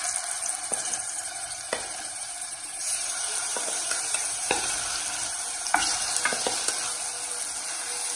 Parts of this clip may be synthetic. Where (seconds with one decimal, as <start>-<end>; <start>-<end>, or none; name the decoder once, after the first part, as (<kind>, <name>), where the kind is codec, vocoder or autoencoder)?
0.5-4.7 (vocoder, BigVGAN v2); 5.2-6.0